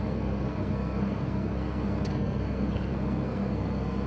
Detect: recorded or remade remade